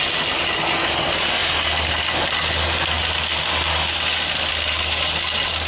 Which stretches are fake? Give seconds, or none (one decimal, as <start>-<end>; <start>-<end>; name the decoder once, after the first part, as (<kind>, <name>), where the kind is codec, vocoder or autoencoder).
none